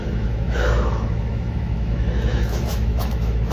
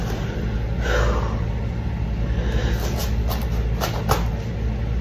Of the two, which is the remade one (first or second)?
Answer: first